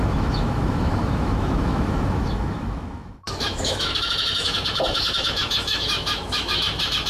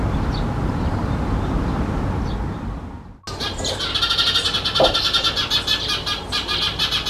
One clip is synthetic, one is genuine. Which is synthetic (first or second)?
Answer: first